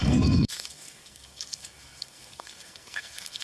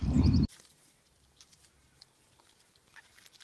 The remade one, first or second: first